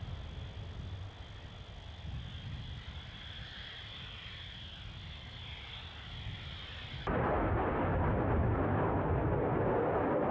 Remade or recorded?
recorded